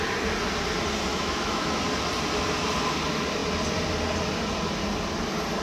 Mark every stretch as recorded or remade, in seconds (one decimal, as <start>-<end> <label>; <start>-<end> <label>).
0.0-1.1 recorded; 1.1-1.8 remade; 1.8-5.6 recorded